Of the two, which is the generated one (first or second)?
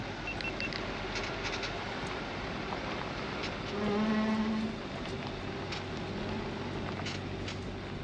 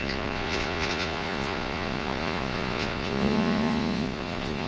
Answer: second